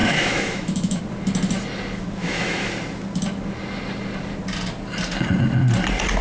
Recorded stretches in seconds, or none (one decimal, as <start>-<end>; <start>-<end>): 1.0-2.2; 2.7-6.2